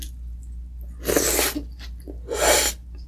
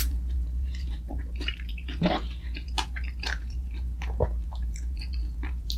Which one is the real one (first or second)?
first